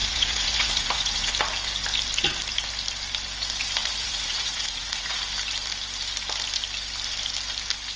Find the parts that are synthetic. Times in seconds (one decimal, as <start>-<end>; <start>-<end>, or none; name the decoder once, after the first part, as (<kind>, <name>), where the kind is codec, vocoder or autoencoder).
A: 0.0-1.3 (vocoder, Vocos); 3.8-5.2